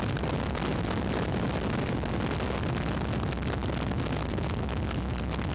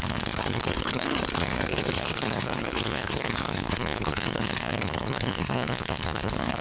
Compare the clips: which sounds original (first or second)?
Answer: first